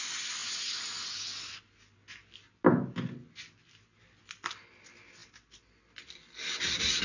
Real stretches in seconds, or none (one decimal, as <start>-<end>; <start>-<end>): 0.0-7.0